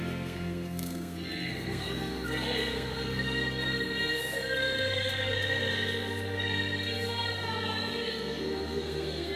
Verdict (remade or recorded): remade